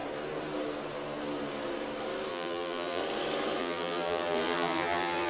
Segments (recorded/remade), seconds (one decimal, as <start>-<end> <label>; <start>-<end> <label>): 0.0-2.3 recorded; 2.3-3.0 remade; 3.0-3.6 recorded; 3.6-5.3 remade